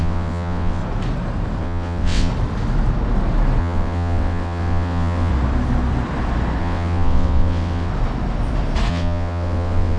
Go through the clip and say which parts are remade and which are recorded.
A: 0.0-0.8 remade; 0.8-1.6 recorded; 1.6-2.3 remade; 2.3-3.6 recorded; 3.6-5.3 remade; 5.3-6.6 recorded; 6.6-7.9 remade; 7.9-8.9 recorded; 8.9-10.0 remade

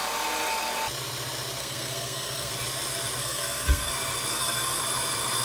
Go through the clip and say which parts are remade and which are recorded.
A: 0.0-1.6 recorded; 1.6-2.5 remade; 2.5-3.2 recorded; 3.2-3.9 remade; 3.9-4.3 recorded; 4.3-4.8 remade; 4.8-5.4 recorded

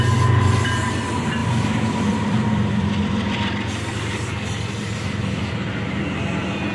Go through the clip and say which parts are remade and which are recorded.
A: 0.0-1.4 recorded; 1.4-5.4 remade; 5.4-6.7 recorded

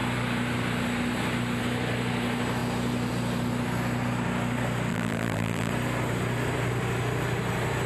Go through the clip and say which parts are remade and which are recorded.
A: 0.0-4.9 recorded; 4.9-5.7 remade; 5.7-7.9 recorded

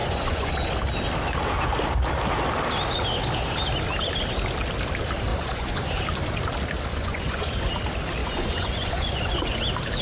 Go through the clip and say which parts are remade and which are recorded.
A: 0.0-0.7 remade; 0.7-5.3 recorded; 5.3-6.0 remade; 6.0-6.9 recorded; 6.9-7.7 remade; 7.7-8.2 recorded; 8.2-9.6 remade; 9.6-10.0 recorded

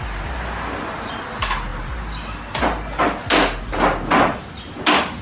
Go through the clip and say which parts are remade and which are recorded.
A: 0.0-5.2 recorded

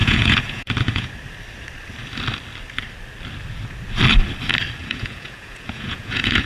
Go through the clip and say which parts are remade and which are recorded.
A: 0.0-1.1 remade; 1.1-4.8 recorded; 4.8-6.5 remade

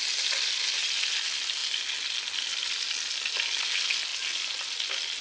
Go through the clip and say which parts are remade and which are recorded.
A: 0.0-5.2 recorded